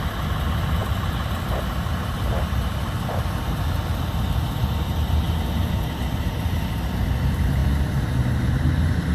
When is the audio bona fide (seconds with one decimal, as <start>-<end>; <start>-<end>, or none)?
0.0-9.1

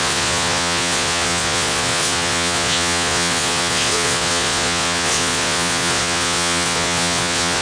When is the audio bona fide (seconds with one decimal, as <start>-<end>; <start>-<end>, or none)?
none

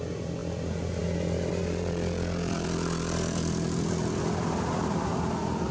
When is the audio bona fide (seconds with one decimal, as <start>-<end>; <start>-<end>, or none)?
0.0-1.6; 5.0-5.7

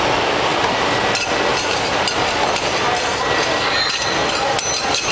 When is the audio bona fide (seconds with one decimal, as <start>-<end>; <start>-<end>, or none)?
0.0-5.1

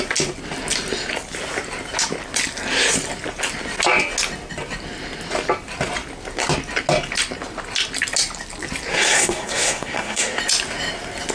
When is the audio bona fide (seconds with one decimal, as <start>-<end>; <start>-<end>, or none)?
0.0-8.9; 10.4-11.3

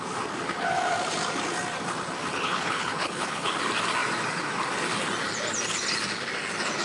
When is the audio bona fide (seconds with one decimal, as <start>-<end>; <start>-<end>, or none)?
0.0-2.3; 3.5-6.8

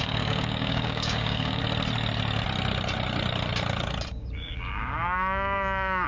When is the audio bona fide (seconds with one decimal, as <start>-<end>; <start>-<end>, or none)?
1.6-4.1